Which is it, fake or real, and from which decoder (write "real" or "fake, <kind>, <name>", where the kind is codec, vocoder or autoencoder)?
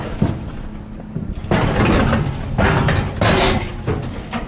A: real